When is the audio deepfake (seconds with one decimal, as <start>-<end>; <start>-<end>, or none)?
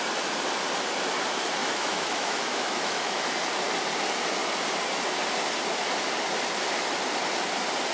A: 1.6-3.3